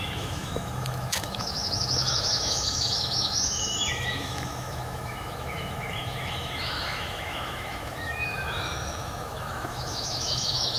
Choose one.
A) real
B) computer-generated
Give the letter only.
B